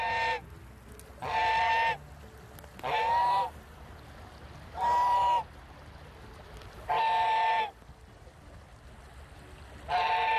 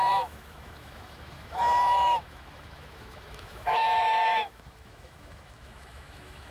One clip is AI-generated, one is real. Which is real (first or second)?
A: first